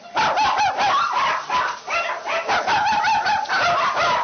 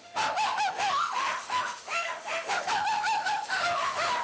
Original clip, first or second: first